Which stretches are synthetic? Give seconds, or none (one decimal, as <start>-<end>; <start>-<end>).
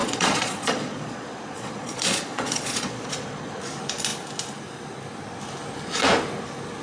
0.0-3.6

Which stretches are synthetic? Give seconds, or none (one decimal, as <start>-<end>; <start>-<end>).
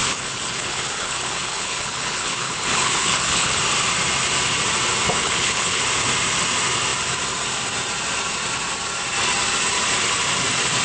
0.0-3.6; 5.2-5.8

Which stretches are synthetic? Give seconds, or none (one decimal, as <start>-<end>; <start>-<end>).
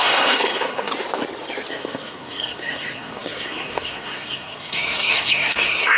0.0-0.9; 1.7-6.0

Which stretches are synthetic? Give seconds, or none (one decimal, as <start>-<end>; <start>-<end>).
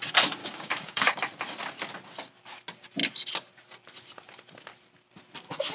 0.4-1.2